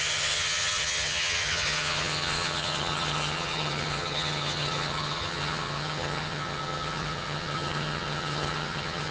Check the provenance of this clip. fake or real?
fake